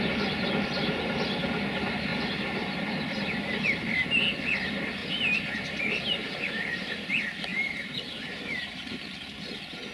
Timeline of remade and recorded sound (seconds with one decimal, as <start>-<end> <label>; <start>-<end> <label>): 0.0-2.1 recorded; 2.1-2.8 remade; 2.8-5.0 recorded; 5.0-7.1 remade; 7.1-7.5 recorded; 7.5-9.0 remade; 9.0-9.9 recorded

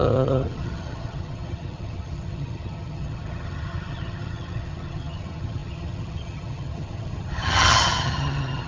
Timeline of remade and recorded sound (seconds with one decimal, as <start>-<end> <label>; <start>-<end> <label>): 0.0-8.7 remade

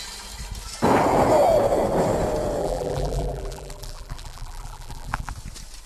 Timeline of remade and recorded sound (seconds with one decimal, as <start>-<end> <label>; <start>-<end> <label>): 0.0-2.6 recorded; 2.6-5.3 remade; 5.3-5.9 recorded

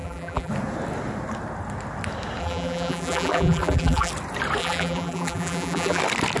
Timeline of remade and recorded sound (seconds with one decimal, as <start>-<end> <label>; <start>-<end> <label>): 0.0-0.5 remade; 0.5-2.4 recorded; 2.4-4.1 remade; 4.1-4.6 recorded; 4.6-6.0 remade; 6.0-6.4 recorded

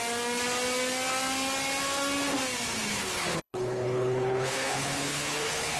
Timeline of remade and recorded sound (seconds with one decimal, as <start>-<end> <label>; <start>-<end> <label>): 0.0-2.9 recorded; 2.9-5.8 remade

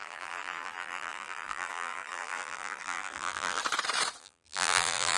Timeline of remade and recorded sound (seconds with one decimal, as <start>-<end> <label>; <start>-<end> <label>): 0.0-3.6 remade; 3.6-4.2 recorded; 4.2-5.2 remade